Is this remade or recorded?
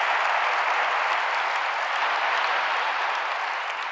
recorded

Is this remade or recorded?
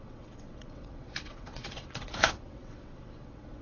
remade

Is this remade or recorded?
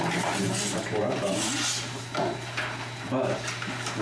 recorded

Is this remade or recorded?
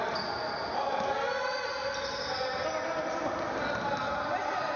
recorded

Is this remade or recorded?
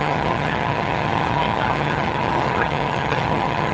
remade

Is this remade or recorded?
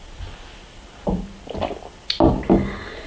recorded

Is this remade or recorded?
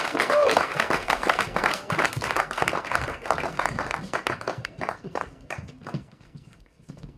remade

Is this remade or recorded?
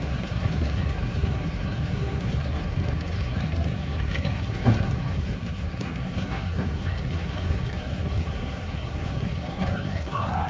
remade